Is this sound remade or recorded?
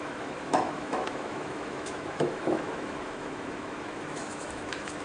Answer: remade